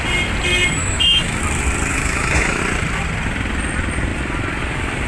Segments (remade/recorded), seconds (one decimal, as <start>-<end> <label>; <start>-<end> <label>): 0.0-0.8 recorded; 0.8-1.4 remade; 1.4-1.9 recorded; 1.9-2.6 remade; 2.6-5.1 recorded